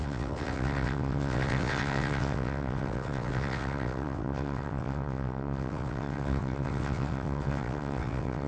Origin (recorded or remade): remade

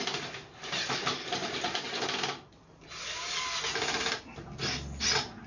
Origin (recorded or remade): recorded